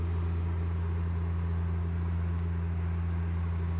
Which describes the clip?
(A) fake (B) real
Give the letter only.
B